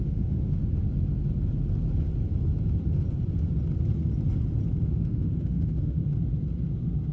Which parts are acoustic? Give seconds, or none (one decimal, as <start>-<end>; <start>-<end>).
0.6-4.9; 6.0-7.1